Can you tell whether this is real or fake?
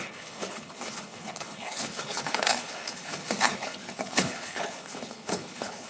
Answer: fake